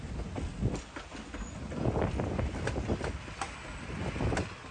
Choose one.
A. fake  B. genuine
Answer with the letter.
B